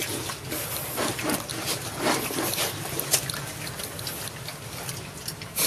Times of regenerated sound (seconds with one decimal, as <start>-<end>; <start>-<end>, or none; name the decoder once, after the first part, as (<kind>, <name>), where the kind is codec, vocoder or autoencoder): 1.5-3.7 (vocoder, BigVGAN v2)